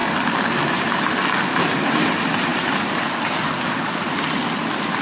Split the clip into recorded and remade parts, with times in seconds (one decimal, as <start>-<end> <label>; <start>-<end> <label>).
0.0-5.0 recorded